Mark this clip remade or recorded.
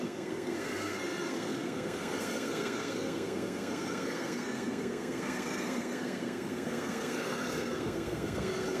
remade